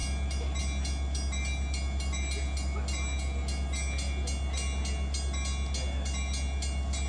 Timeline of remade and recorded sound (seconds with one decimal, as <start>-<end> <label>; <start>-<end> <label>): 0.0-7.1 recorded